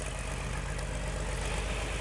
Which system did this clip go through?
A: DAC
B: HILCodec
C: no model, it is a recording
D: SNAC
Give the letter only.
C